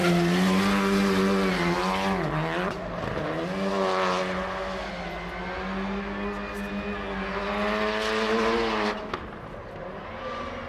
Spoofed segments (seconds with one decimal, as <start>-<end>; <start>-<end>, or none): none